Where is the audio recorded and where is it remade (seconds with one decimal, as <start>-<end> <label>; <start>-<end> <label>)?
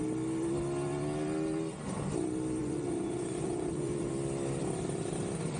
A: 0.0-2.6 recorded; 2.6-4.1 remade; 4.1-5.6 recorded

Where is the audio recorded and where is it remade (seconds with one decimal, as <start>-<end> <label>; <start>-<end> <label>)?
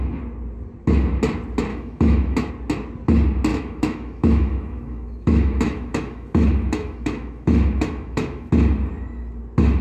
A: 0.0-1.7 recorded; 1.7-2.5 remade; 2.5-3.5 recorded; 3.5-8.5 remade; 8.5-9.8 recorded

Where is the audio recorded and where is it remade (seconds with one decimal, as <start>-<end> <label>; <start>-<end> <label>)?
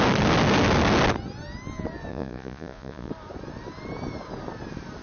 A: 0.0-2.1 recorded; 2.1-3.1 remade; 3.1-5.0 recorded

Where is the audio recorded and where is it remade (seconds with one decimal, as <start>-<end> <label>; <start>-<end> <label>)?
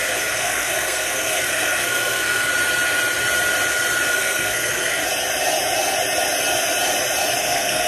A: 0.0-2.5 remade; 2.5-4.1 recorded; 4.1-5.0 remade; 5.0-7.4 recorded; 7.4-7.9 remade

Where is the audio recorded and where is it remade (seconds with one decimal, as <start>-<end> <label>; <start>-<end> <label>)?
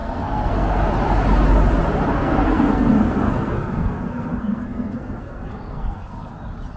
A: 0.0-0.9 remade; 0.9-2.2 recorded; 2.2-6.3 remade; 6.3-6.8 recorded